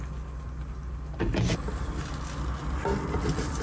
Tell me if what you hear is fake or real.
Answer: real